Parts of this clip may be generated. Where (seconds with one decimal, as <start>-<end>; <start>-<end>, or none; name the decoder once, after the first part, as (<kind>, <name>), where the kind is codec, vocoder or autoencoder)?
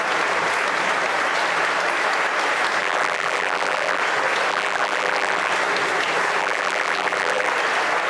2.8-4.0 (vocoder, BigVGAN v2); 4.5-5.5; 6.4-7.5